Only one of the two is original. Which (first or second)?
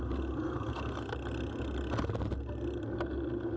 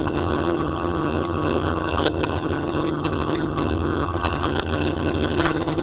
first